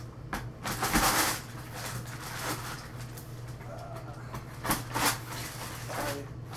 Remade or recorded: recorded